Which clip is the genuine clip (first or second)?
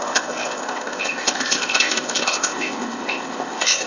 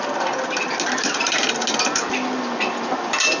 second